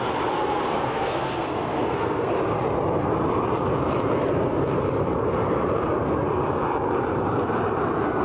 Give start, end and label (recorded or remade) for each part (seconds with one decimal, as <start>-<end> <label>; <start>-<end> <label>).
0.0-0.7 recorded; 0.7-2.3 remade; 2.3-8.2 recorded